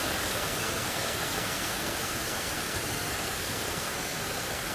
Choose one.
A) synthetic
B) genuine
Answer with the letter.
A